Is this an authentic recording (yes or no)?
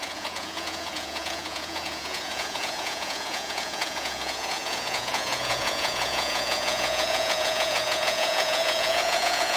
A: no